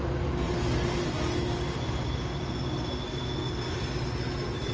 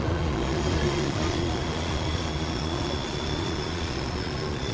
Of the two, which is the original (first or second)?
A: first